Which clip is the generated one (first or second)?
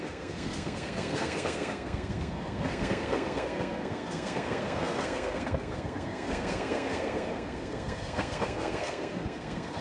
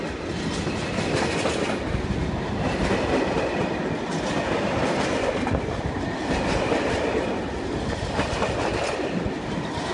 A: first